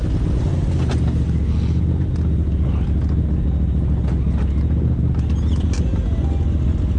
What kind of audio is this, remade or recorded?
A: recorded